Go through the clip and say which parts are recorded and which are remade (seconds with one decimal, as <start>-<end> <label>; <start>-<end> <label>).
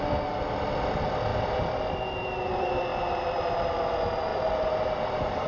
0.0-5.5 recorded